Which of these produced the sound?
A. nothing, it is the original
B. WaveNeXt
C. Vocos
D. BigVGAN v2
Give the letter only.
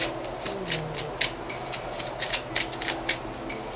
A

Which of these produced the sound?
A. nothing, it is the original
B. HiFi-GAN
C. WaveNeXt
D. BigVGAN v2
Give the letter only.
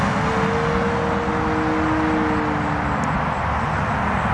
A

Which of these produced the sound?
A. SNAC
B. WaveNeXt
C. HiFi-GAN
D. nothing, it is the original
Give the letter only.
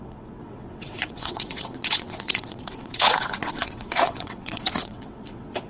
B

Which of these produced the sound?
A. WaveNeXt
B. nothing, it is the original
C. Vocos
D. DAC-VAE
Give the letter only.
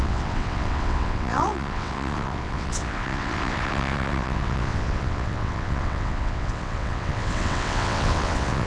A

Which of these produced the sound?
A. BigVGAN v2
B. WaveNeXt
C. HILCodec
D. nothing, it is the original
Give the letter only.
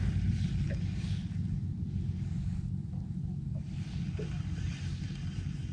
D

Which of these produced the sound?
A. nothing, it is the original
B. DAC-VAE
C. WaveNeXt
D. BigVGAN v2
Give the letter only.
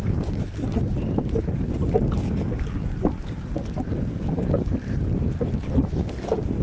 A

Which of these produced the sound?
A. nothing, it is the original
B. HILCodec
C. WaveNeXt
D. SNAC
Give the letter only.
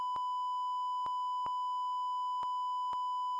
A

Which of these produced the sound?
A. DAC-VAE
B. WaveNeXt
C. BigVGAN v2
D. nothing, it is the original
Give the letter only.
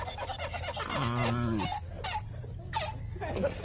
D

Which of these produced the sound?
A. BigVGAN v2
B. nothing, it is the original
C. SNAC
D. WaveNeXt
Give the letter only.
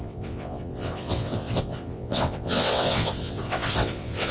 D